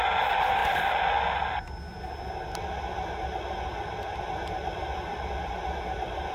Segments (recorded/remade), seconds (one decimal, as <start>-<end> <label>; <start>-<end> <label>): 0.0-6.3 recorded